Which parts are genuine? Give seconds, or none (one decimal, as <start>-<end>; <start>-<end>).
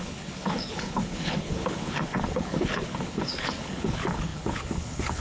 none